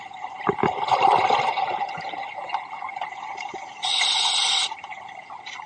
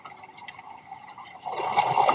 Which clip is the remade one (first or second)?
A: first